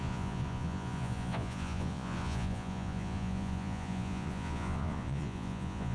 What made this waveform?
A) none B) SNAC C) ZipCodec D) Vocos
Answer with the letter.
D